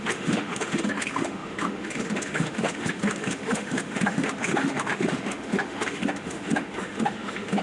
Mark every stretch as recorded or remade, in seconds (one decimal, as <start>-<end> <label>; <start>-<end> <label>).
0.0-7.6 remade